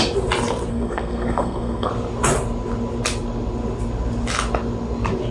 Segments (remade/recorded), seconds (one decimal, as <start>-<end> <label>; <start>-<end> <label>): 0.0-0.7 recorded; 0.7-1.9 remade; 1.9-5.3 recorded